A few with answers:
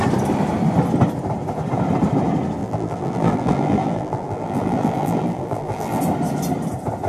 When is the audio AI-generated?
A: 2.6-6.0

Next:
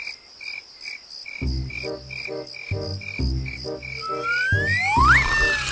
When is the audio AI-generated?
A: none

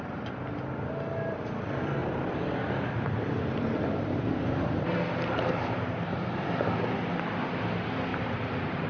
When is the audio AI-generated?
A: 2.0-6.5; 8.1-8.9